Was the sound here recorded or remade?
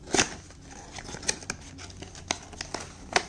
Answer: recorded